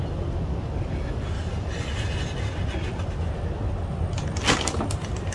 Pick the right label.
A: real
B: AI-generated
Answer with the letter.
A